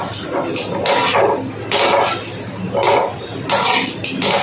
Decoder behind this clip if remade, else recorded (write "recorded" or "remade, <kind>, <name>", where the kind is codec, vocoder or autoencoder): recorded